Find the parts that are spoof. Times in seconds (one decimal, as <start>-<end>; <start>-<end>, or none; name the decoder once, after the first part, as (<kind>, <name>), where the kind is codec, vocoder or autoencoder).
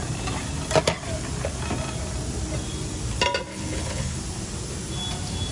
3.5-4.2 (codec, HILCodec)